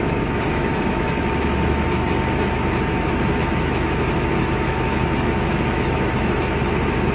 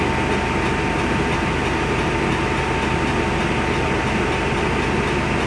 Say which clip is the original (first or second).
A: second